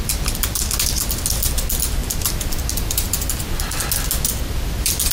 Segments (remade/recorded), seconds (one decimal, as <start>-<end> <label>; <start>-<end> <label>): 0.0-2.0 recorded; 2.0-3.8 remade; 3.8-5.1 recorded